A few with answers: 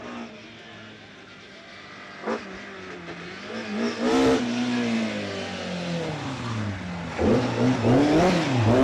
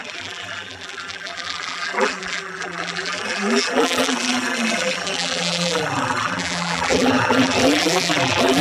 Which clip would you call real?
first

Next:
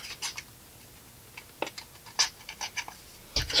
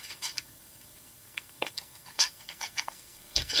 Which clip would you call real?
first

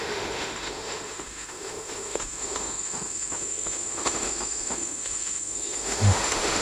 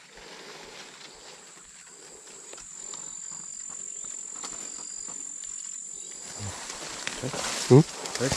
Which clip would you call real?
second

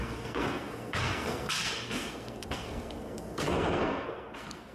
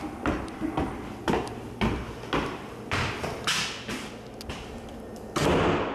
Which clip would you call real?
second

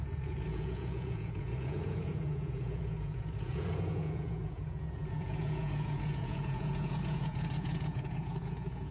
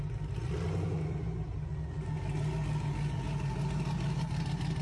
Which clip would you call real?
second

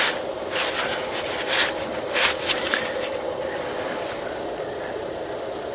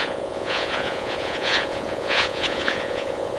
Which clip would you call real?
first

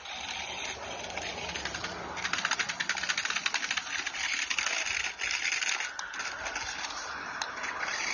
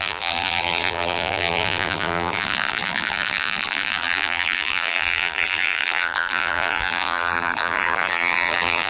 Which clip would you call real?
first